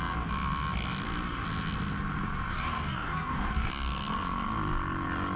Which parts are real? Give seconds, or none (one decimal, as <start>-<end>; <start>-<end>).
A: 0.0-2.5; 3.7-5.4